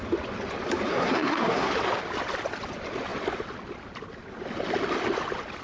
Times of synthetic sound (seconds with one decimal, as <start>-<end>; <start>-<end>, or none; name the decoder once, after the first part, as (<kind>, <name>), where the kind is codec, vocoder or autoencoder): 0.9-1.7 (codec, SNAC)